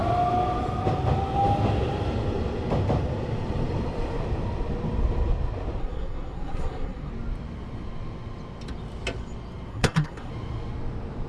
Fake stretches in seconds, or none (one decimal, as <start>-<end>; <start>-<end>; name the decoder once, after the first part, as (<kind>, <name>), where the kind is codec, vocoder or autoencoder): 5.8-7.1 (codec, SNAC); 9.7-10.3